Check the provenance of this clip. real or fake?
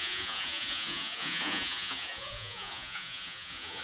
fake